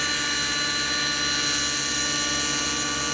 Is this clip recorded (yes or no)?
yes